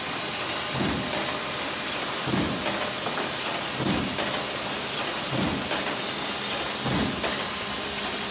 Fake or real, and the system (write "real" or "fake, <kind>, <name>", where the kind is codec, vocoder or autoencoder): real